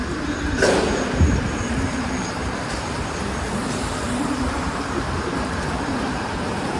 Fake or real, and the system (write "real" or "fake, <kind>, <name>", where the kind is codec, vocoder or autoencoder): fake, vocoder, BigVGAN v2